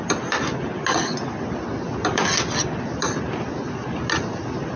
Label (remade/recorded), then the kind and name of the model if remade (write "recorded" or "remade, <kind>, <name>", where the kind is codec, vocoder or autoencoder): recorded